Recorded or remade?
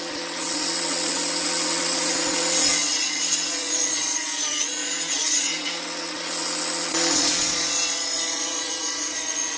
remade